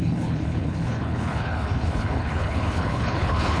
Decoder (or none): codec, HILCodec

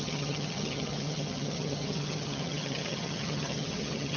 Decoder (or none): vocoder, HiFi-GAN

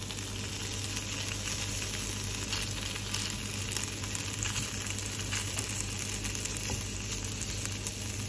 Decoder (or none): none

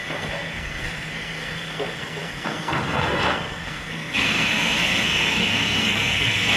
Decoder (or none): codec, SNAC